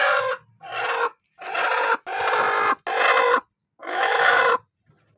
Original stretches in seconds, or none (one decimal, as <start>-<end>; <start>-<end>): 0.0-3.8; 4.4-5.2